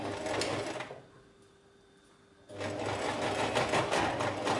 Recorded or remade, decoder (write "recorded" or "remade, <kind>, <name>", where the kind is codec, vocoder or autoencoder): recorded